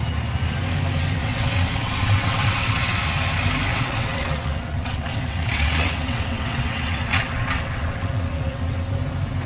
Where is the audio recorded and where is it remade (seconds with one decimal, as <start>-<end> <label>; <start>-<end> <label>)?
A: 0.0-1.2 recorded; 1.2-3.1 remade; 3.1-3.7 recorded; 3.7-8.9 remade; 8.9-9.5 recorded